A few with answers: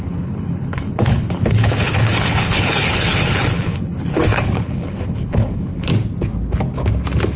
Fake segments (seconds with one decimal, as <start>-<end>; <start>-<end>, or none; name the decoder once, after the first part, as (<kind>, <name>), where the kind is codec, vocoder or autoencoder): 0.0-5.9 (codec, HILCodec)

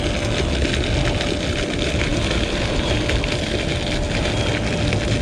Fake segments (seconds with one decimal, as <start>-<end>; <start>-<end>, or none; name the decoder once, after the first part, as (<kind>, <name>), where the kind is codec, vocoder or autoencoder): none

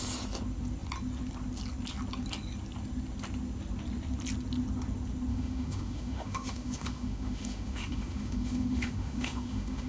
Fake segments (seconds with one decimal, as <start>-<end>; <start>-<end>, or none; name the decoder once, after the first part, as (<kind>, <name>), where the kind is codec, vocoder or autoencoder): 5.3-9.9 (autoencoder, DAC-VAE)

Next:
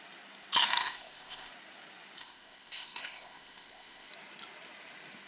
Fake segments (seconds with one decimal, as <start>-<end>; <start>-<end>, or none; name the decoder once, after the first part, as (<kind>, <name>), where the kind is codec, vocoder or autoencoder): 0.8-1.5 (codec, ZipCodec); 2.2-4.1

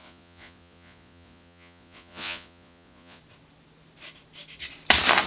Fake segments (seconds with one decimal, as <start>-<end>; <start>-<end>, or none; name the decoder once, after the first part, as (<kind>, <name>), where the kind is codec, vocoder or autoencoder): 0.0-3.2 (vocoder, Vocos)

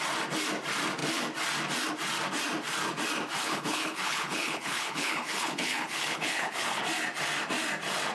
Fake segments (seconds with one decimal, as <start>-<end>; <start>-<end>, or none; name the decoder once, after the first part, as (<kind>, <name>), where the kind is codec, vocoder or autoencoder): 3.4-6.8 (codec, HILCodec)

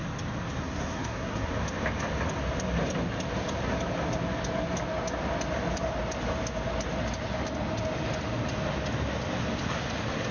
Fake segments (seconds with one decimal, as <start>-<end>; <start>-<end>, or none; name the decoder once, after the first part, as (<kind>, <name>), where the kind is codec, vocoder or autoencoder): 0.6-1.5 (codec, SNAC)

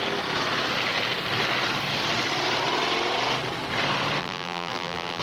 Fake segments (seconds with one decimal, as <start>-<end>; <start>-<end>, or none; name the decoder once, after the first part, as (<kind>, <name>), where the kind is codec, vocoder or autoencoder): 4.2-5.2 (vocoder, BigVGAN v2)